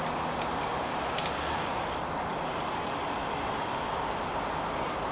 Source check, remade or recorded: recorded